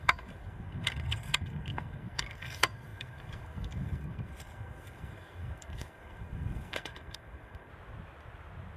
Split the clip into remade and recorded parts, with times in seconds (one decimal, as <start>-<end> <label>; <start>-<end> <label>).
0.0-7.7 remade; 7.7-8.8 recorded